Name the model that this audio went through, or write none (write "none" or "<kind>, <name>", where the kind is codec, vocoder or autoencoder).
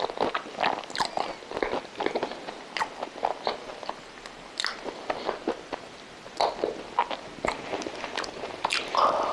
none